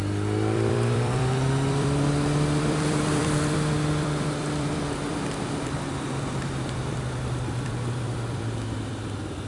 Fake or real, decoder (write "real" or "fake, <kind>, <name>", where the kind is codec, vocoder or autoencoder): fake, vocoder, BigVGAN v2